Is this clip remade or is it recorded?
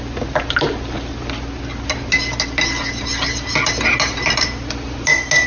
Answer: recorded